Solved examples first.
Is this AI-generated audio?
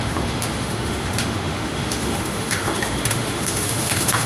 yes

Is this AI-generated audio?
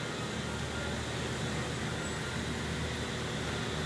no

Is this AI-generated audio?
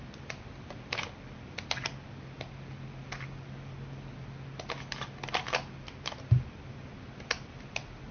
no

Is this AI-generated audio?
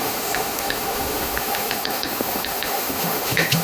yes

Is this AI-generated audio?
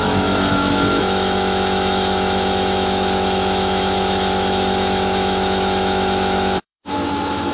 yes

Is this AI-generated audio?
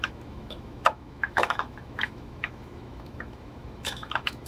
yes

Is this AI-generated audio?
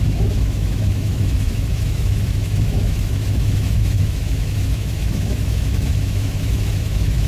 yes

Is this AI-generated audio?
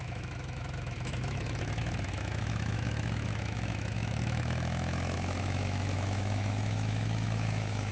yes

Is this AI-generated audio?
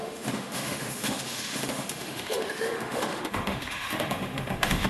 yes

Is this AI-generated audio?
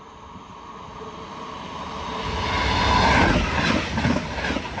no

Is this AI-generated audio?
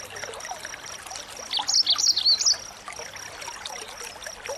no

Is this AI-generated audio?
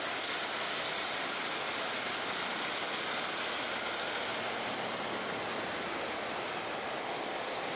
no